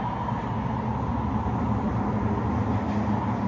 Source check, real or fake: real